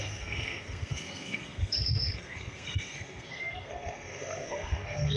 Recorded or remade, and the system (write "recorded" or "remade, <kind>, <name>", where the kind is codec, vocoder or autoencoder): remade, codec, SNAC